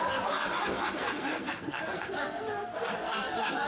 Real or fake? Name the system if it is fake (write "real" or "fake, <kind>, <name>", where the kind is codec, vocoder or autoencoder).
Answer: fake, codec, SNAC